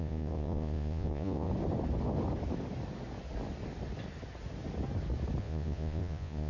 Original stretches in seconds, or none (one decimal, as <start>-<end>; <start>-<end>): 1.5-5.4